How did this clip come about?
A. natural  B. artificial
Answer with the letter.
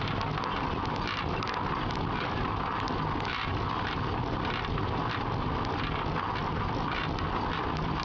A